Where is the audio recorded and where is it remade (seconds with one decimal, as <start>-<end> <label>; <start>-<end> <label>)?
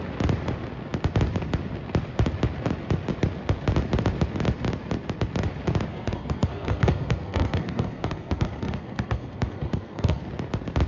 0.0-5.9 recorded; 5.9-10.2 remade; 10.2-10.9 recorded